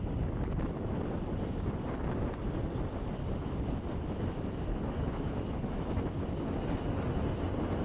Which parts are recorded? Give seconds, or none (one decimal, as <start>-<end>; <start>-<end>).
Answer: 0.0-3.2; 3.7-4.7; 5.9-7.8